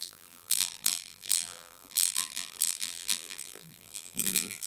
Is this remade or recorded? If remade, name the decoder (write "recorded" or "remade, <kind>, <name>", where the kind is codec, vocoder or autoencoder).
remade, vocoder, BigVGAN v2